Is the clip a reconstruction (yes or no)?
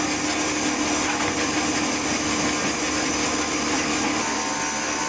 no